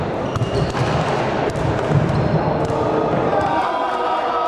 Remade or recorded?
recorded